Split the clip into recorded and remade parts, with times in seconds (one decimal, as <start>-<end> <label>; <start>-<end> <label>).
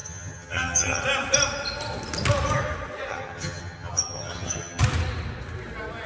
0.0-1.0 remade; 1.0-3.1 recorded; 3.1-4.8 remade; 4.8-6.1 recorded